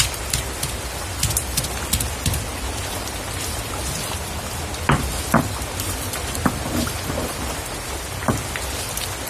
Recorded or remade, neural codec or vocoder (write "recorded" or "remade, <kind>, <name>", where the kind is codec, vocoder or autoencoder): remade, vocoder, BigVGAN v2